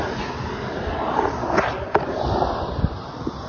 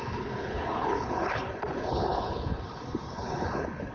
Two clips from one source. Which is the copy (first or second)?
second